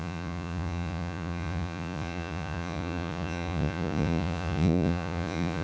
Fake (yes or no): yes